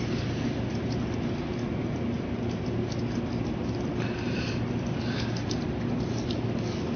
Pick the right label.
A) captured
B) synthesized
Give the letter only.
A